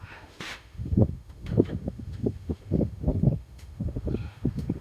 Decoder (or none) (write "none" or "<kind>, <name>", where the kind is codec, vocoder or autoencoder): autoencoder, DAC-VAE